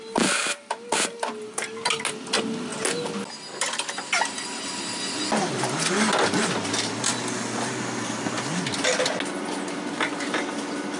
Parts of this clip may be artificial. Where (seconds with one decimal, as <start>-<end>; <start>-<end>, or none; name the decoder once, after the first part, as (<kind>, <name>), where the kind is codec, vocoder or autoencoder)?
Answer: none